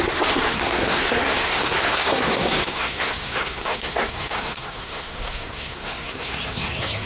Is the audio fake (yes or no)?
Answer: yes